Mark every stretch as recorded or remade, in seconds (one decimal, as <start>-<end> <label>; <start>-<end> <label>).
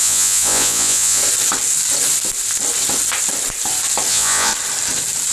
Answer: 0.0-1.2 remade; 1.2-4.1 recorded; 4.1-4.5 remade; 4.5-5.3 recorded